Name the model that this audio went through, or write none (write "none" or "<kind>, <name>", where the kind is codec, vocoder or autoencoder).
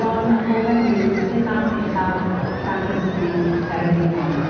none